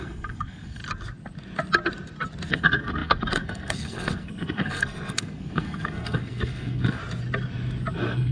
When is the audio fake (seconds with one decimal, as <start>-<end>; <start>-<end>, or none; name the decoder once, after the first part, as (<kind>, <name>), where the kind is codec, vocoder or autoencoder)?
0.0-0.8 (codec, SNAC); 2.5-7.0; 7.9-8.3